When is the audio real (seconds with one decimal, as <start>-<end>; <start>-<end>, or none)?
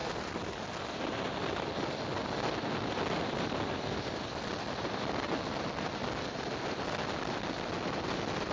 0.0-8.5